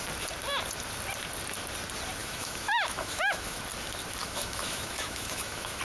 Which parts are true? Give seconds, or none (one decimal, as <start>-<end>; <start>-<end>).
0.0-2.2; 3.6-4.2